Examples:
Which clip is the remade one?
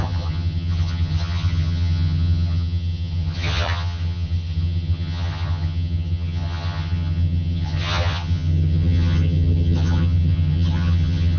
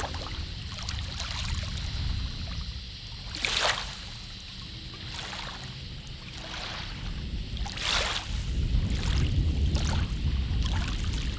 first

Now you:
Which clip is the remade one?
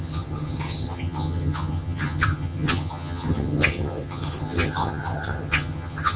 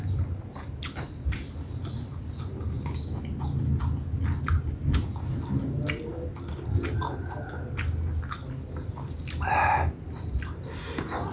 first